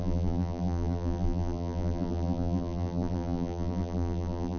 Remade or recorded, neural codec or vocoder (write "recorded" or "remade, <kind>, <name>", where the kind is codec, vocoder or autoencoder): remade, vocoder, BigVGAN v2